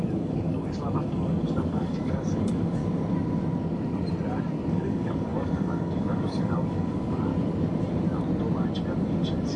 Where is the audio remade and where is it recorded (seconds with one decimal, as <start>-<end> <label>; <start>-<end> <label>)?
0.0-2.8 remade; 2.8-4.7 recorded; 4.7-7.3 remade; 7.3-9.6 recorded